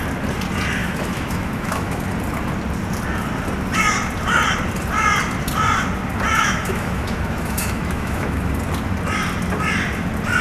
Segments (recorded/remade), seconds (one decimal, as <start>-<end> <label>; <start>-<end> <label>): 0.0-0.8 recorded; 0.8-2.0 remade; 2.0-6.3 recorded; 6.3-8.5 remade; 8.5-10.4 recorded